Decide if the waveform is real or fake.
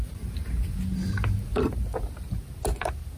real